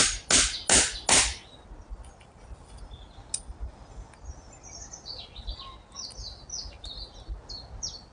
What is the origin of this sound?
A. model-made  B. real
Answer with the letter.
B